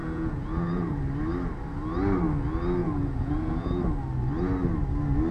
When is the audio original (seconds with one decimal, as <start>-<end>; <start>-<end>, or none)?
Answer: 1.0-2.8; 3.8-5.3